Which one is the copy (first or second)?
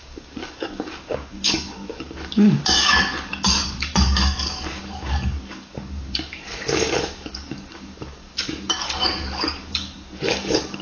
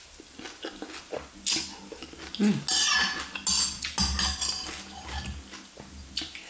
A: first